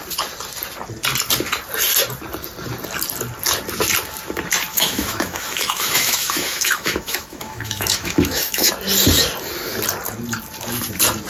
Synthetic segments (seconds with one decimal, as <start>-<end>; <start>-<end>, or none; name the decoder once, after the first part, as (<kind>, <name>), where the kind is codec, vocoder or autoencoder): 4.7-8.7 (autoencoder, DAC-VAE)